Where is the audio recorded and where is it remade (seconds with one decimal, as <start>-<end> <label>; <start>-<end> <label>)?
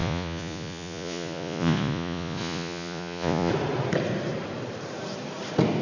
0.0-3.5 remade; 3.5-5.8 recorded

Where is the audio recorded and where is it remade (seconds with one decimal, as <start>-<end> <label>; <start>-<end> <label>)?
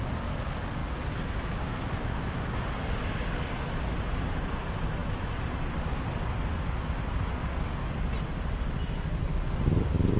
0.0-10.2 recorded